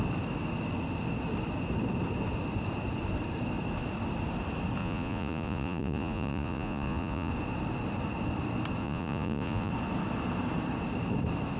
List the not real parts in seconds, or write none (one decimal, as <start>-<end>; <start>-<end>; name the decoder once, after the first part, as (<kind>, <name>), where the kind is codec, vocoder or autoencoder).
4.8-7.3 (vocoder, Vocos); 8.8-9.7